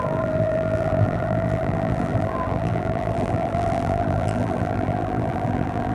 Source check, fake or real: fake